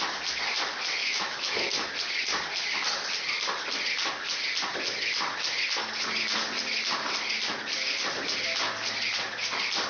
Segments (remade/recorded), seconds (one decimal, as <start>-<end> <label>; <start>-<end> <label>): 0.0-1.0 recorded; 1.0-1.9 remade; 1.9-9.9 recorded